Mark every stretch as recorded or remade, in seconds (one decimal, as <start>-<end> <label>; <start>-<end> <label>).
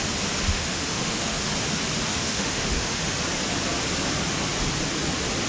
0.0-0.5 recorded; 0.5-1.4 remade; 1.4-2.1 recorded; 2.1-3.2 remade; 3.2-5.5 recorded